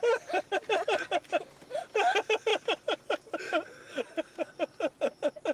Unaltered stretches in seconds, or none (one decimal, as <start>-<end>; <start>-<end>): 0.0-3.8; 4.5-5.5